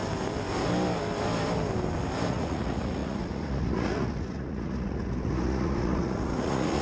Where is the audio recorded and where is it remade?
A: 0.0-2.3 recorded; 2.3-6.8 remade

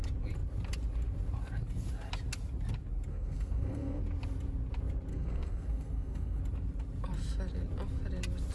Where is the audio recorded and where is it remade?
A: 0.0-3.1 recorded; 3.1-4.0 remade; 4.0-5.1 recorded; 5.1-6.4 remade; 6.4-8.5 recorded

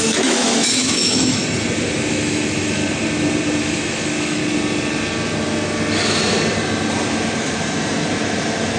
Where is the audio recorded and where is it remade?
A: 0.0-1.4 remade; 1.4-2.1 recorded; 2.1-2.8 remade; 2.8-3.6 recorded; 3.6-4.4 remade; 4.4-8.8 recorded

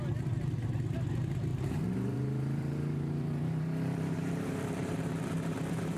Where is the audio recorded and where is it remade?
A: 0.0-1.5 recorded; 1.5-5.1 remade; 5.1-6.0 recorded

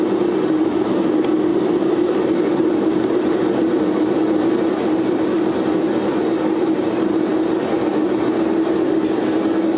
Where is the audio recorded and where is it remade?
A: 0.0-1.5 recorded; 1.5-3.2 remade; 3.2-9.8 recorded

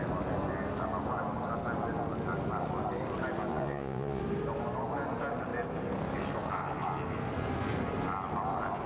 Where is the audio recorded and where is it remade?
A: 0.0-3.5 recorded; 3.5-4.2 remade; 4.2-8.9 recorded

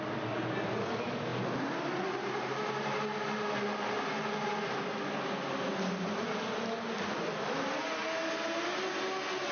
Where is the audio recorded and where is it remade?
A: 0.0-9.5 recorded